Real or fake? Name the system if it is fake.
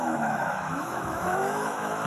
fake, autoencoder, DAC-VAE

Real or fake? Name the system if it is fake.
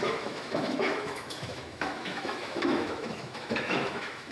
fake, autoencoder, DAC-VAE